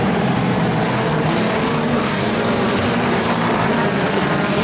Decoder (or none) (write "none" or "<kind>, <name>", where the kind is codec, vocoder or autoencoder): vocoder, BigVGAN v2